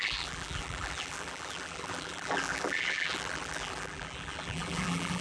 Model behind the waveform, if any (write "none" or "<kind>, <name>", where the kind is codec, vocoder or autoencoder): vocoder, BigVGAN v2